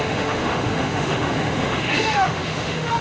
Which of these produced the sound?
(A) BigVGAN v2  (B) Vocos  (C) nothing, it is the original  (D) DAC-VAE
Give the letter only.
D